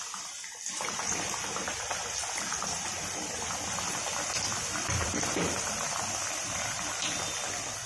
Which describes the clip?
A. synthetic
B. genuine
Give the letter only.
A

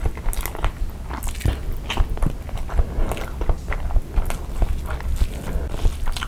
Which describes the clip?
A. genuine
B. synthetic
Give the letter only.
A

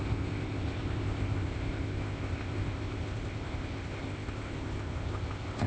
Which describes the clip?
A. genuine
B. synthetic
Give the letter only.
B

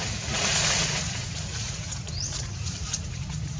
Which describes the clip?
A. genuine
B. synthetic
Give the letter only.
B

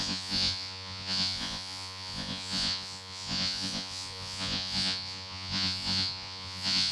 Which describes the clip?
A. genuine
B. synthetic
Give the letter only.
B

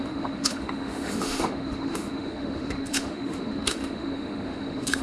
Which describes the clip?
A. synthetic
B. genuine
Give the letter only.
A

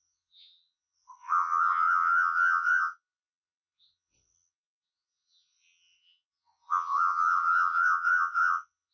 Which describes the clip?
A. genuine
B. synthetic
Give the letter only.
B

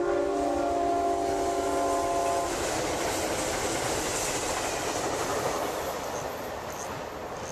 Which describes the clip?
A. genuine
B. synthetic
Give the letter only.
A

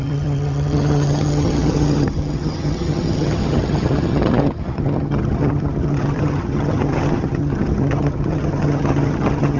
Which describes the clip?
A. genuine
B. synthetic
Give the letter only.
B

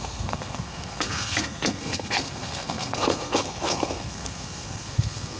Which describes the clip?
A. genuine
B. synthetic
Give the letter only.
B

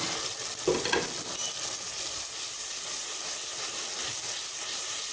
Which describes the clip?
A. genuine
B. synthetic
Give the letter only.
A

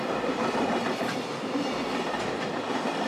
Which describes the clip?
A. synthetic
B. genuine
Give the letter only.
A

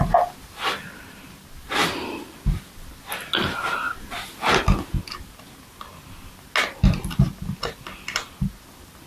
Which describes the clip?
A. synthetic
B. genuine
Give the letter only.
B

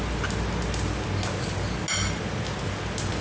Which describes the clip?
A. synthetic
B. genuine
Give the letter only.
B